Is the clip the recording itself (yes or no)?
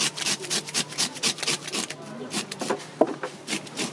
yes